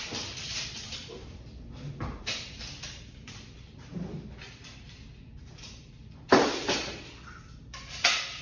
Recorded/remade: recorded